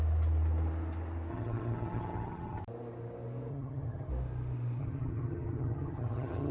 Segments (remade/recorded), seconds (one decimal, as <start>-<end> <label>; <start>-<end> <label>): 0.0-1.3 recorded; 1.3-2.6 remade; 2.6-3.5 recorded; 3.5-4.1 remade; 4.1-4.8 recorded; 4.8-6.5 remade